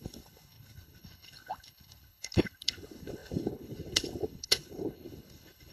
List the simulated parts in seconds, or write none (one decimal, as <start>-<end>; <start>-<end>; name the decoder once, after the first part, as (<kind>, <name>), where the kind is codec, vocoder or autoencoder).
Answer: 0.0-5.7 (codec, HILCodec)